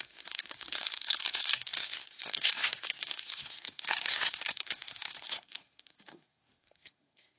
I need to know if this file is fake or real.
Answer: fake